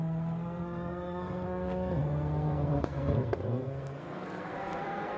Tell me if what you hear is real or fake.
fake